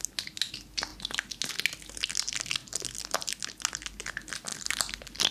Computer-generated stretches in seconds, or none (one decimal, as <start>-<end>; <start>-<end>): 4.5-5.3